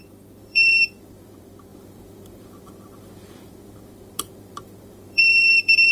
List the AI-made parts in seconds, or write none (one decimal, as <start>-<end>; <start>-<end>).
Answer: 0.0-5.9